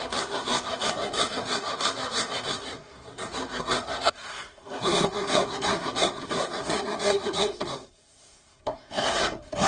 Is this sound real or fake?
fake